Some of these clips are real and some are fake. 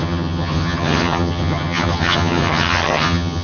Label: fake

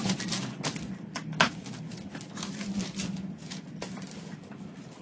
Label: real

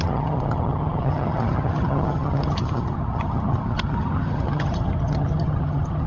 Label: fake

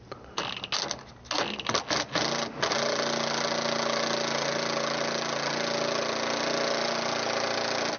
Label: real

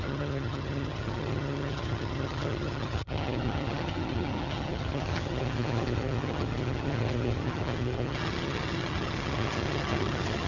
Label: fake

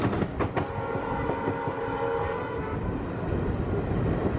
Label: real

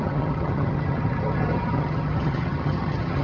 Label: fake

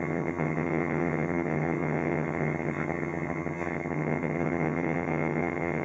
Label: fake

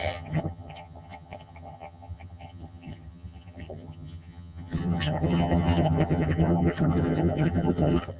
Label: fake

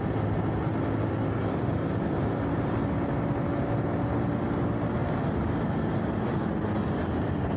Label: real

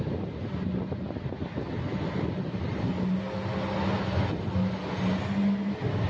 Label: real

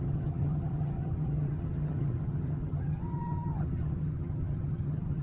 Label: fake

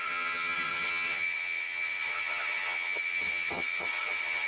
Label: fake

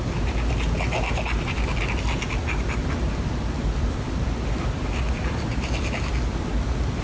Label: real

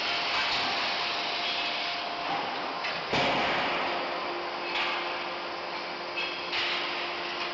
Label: real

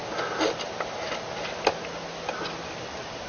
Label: real